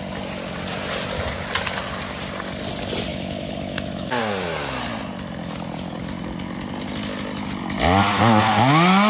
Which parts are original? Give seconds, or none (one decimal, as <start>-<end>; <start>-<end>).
0.0-3.1; 4.2-9.1

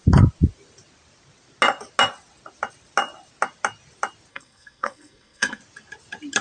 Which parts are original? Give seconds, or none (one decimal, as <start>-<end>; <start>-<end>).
0.0-4.3; 5.6-6.4

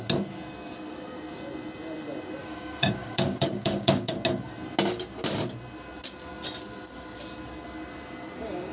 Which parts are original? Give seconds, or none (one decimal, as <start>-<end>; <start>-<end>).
0.0-2.4; 4.1-8.7

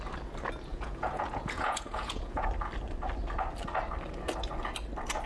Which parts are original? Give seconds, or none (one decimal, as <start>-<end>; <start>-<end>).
0.0-0.7; 2.5-5.3

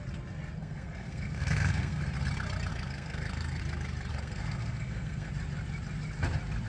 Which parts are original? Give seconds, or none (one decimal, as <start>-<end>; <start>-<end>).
0.0-0.6; 2.0-2.7; 3.6-4.1; 5.3-6.7

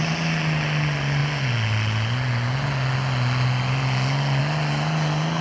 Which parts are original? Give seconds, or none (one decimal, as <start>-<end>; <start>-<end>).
0.0-5.4